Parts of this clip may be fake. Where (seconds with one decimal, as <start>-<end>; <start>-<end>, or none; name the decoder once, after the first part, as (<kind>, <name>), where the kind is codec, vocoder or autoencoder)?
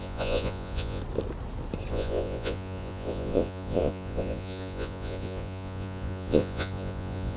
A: 0.0-1.0 (vocoder, Vocos); 1.9-7.4